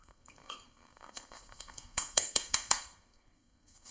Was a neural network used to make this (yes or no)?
yes